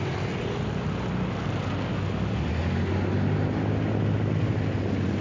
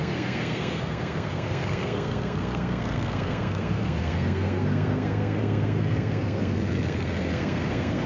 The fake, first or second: second